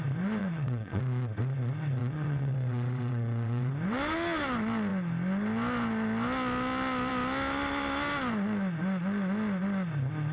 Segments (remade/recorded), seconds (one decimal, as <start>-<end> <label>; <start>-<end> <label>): 0.0-0.4 recorded; 0.4-1.0 remade; 1.0-2.0 recorded; 2.0-3.7 remade; 3.7-10.3 recorded